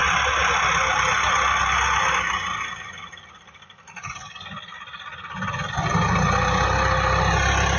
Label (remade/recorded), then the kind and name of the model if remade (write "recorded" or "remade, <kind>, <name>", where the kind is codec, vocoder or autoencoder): recorded